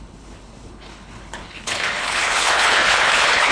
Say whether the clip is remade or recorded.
remade